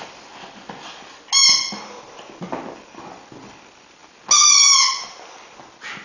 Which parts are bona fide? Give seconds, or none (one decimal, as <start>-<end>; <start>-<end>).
0.0-6.0